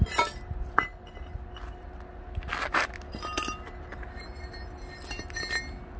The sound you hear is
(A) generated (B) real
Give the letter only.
B